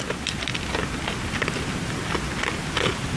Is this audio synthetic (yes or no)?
no